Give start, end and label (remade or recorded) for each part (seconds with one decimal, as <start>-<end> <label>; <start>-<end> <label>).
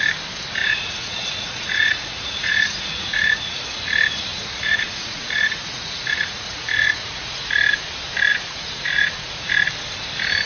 0.0-0.6 recorded; 0.6-3.6 remade; 3.6-4.3 recorded; 4.3-7.5 remade; 7.5-8.3 recorded; 8.3-9.5 remade; 9.5-10.5 recorded